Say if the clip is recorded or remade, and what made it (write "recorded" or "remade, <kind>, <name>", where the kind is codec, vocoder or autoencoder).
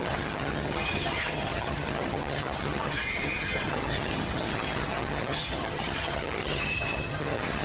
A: remade, vocoder, HiFi-GAN